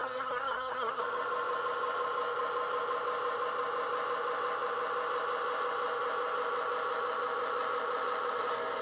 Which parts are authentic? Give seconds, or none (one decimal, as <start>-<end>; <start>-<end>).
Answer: 1.0-8.8